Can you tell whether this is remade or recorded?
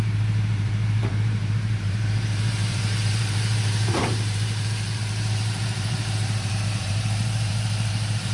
remade